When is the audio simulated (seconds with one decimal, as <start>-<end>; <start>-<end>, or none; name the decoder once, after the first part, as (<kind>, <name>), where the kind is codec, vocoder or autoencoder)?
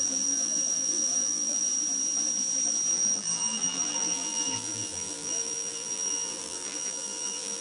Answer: 0.0-1.7 (vocoder, BigVGAN v2); 2.9-7.6